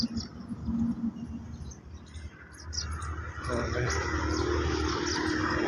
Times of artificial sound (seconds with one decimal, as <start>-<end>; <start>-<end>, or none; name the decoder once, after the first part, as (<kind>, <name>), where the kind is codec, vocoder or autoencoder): none